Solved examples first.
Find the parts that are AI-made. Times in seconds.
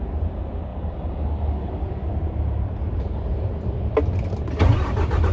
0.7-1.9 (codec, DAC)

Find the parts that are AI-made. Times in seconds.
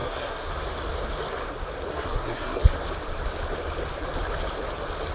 0.0-0.5 (codec, SNAC); 1.9-2.6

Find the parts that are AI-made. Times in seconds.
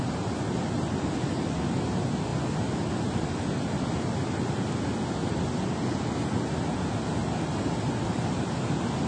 none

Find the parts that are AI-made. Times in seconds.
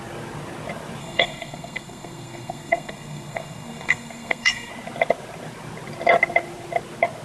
1.0-4.7 (codec, SNAC)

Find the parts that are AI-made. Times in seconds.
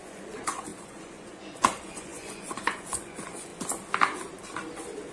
0.0-3.5 (vocoder, Vocos)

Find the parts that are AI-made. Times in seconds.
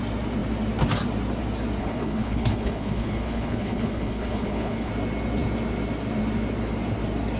1.8-4.9 (codec, HILCodec)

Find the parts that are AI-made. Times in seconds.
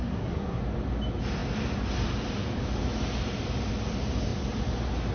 0.0-0.6 (codec, SNAC)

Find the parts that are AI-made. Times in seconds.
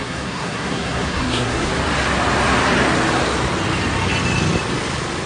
0.0-1.7 (codec, SNAC)